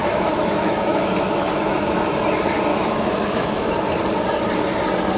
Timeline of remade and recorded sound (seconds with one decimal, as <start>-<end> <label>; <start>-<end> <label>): 0.0-2.1 remade; 2.1-2.7 recorded; 2.7-3.7 remade; 3.7-5.2 recorded